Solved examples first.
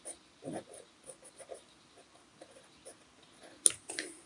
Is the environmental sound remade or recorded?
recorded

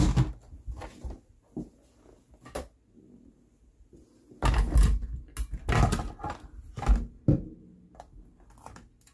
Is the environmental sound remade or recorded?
recorded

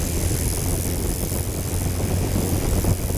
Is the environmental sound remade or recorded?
recorded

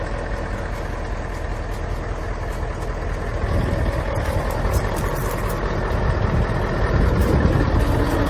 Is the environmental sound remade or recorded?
recorded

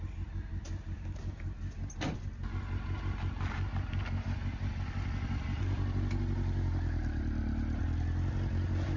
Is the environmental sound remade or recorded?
recorded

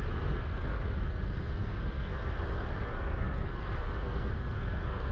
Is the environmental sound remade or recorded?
remade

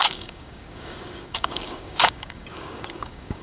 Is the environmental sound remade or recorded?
remade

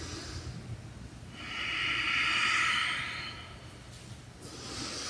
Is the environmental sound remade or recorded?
recorded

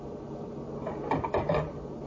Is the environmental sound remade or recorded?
recorded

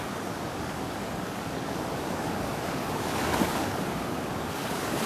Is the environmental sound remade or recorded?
remade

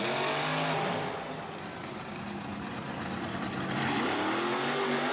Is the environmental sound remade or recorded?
recorded